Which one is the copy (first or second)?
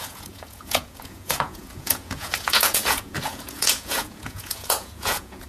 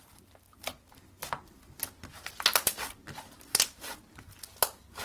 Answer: first